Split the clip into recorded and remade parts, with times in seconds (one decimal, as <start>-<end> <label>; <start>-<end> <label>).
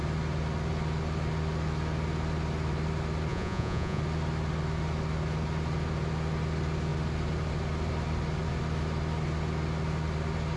0.0-3.3 recorded; 3.3-4.0 remade; 4.0-10.6 recorded